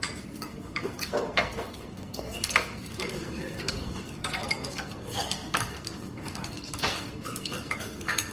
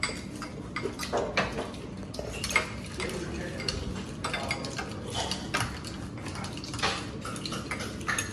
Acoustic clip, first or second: second